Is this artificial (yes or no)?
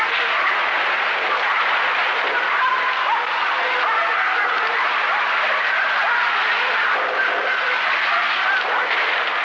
no